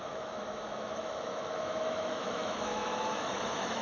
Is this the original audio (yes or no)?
no